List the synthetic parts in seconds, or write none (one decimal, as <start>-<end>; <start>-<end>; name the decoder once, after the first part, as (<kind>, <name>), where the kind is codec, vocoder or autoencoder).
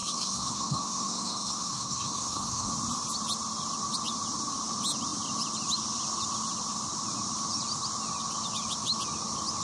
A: 0.0-2.7 (codec, SNAC)